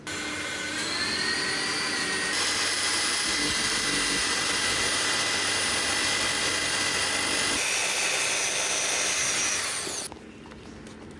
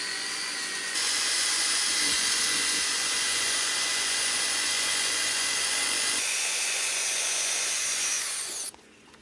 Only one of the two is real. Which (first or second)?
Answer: first